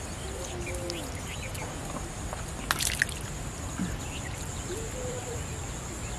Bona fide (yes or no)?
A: yes